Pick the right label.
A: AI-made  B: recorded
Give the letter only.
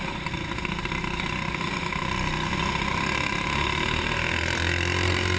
B